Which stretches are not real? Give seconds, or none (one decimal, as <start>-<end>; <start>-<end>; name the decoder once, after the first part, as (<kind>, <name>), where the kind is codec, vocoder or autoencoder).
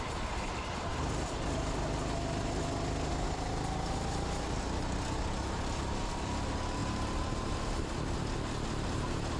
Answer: 6.8-7.5 (vocoder, BigVGAN v2)